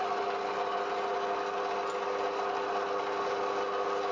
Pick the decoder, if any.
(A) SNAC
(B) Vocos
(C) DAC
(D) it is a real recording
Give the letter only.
D